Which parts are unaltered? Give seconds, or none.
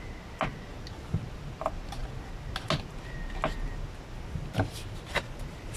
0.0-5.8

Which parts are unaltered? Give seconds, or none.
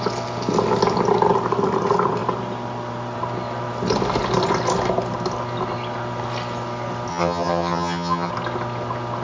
0.0-7.1; 8.3-9.2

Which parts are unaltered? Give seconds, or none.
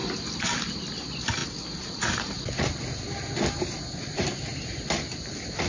0.0-5.7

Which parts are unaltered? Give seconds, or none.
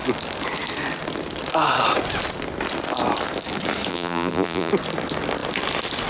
0.0-3.9; 4.7-6.1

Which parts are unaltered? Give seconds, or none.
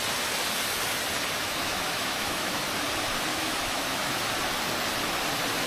0.0-1.4; 2.6-3.3; 4.1-5.7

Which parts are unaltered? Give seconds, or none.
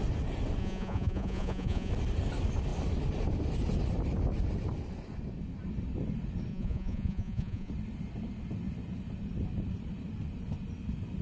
0.0-0.6; 1.9-6.5; 7.7-11.2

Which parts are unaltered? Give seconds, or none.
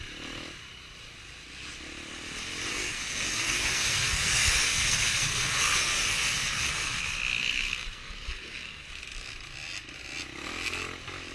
0.0-2.7; 7.0-7.4; 8.9-11.3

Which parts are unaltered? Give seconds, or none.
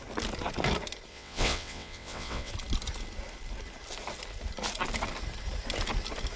0.0-1.1; 2.5-6.4